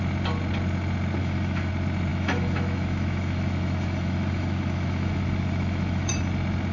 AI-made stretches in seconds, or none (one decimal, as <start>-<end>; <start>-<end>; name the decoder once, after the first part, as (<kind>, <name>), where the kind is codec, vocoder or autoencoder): 1.2-1.7 (autoencoder, DAC-VAE); 2.1-6.1